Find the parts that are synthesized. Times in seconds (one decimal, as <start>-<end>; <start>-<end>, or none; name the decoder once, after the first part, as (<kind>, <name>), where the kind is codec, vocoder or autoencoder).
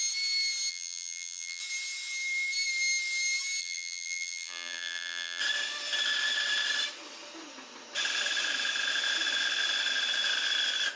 0.7-1.6 (vocoder, BigVGAN v2); 3.6-5.4